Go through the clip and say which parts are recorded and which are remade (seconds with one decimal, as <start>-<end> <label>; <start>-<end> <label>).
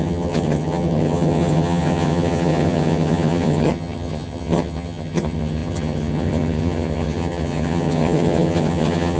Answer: 0.0-9.2 remade